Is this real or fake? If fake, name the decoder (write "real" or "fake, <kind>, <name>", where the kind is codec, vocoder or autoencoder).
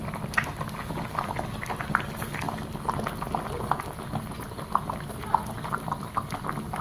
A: real